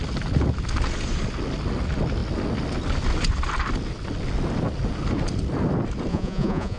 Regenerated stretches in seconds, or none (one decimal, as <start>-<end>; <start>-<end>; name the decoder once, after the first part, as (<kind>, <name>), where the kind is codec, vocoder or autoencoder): 6.1-6.8 (vocoder, Vocos)